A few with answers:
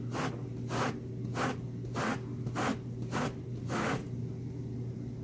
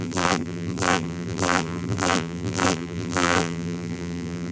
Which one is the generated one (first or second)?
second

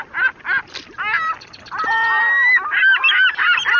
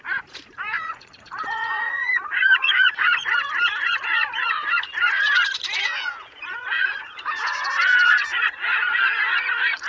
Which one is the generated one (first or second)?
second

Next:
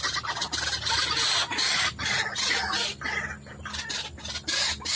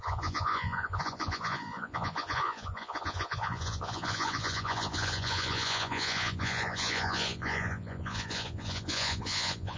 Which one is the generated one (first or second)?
second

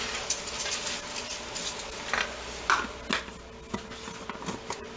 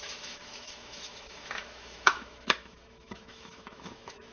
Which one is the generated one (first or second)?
second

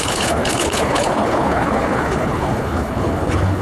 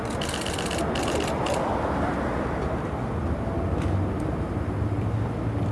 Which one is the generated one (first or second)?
first